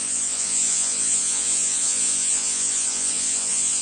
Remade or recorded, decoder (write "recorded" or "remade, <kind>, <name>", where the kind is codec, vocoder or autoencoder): remade, vocoder, Vocos